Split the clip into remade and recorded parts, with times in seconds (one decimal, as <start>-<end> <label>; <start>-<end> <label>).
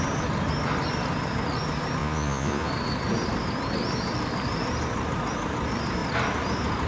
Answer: 0.0-2.0 recorded; 2.0-2.7 remade; 2.7-6.9 recorded